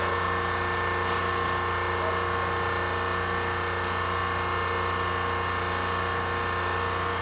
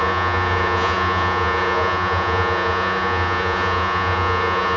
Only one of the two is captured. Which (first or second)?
first